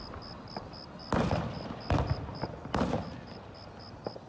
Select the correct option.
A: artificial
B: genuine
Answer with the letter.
B